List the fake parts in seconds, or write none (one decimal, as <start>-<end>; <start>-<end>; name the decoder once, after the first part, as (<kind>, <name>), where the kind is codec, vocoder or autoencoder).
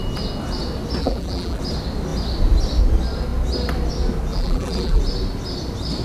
1.0-1.6 (vocoder, BigVGAN v2); 4.3-5.0